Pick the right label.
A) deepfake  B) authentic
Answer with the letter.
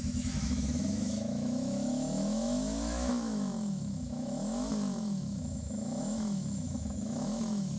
A